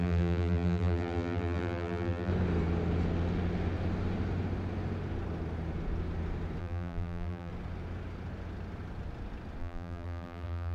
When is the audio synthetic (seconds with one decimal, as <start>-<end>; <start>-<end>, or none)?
0.0-2.3; 6.6-7.5; 9.6-10.7